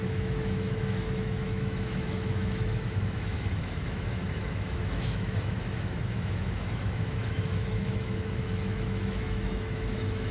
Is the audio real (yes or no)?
no